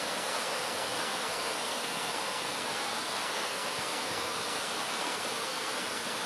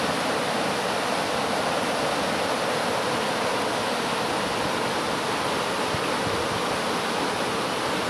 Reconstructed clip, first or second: first